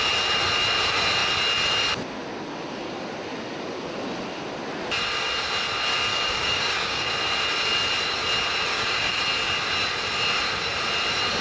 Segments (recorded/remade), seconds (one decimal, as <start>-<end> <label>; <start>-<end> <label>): 0.0-6.1 recorded; 6.1-7.1 remade; 7.1-8.7 recorded; 8.7-9.2 remade; 9.2-11.4 recorded